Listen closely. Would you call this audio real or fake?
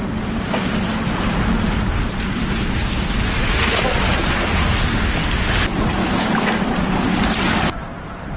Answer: real